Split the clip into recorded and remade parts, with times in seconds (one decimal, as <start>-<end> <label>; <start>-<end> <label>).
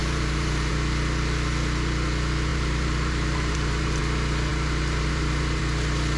0.0-0.7 remade; 0.7-2.5 recorded; 2.5-4.0 remade; 4.0-4.5 recorded; 4.5-5.6 remade; 5.6-6.2 recorded